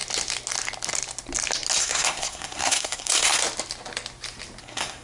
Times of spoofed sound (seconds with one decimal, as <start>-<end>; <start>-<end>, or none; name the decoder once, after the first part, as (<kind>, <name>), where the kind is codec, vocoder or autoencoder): 1.8-3.4 (codec, SNAC); 4.6-5.0